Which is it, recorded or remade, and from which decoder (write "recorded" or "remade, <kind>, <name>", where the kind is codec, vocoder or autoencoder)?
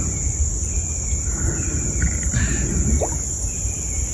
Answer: recorded